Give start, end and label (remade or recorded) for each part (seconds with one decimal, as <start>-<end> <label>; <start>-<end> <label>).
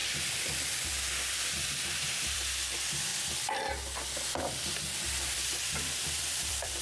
0.0-3.1 remade; 3.1-4.4 recorded; 4.4-6.8 remade